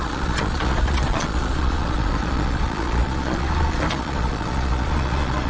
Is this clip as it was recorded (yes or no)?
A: no